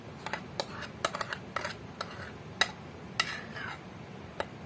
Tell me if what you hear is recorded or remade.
recorded